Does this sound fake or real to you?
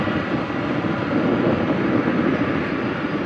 real